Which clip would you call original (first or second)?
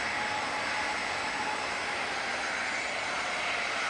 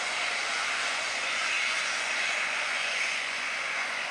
first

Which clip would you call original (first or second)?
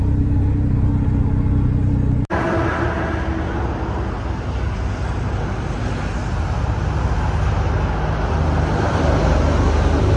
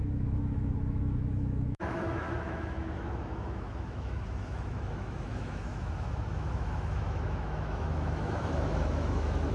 first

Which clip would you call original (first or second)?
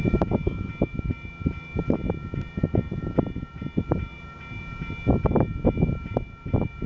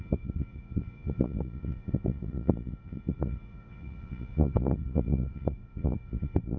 first